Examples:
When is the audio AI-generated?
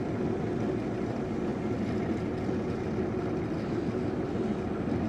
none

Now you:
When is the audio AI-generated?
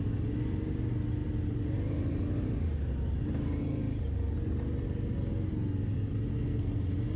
6.3-6.8 (codec, SNAC)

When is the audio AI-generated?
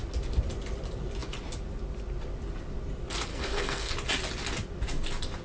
3.3-3.9 (codec, SNAC)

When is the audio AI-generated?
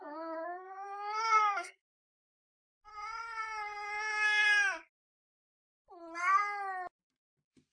0.0-2.9 (codec, SNAC)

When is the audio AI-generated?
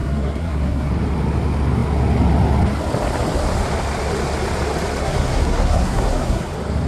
0.0-0.9 (codec, SNAC); 5.0-6.5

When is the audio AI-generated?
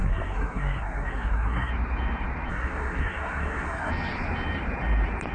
0.0-1.7 (codec, SNAC); 2.5-3.9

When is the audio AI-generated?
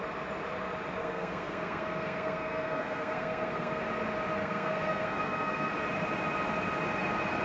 1.0-3.8 (codec, SNAC); 4.4-5.7